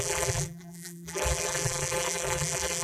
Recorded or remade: remade